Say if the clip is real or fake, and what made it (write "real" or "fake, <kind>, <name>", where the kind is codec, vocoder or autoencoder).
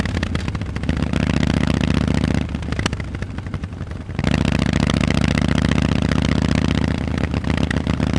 real